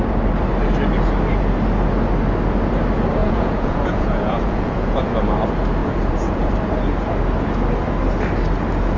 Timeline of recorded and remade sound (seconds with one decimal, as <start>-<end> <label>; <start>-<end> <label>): 0.0-3.2 recorded; 3.2-5.1 remade; 5.1-5.8 recorded; 5.8-6.5 remade; 6.5-9.0 recorded